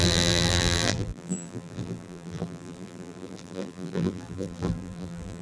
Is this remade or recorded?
remade